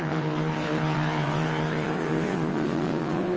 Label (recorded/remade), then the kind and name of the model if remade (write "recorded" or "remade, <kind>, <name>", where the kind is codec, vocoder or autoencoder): remade, vocoder, WaveNeXt